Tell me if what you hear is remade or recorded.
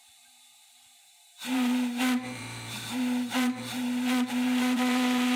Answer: remade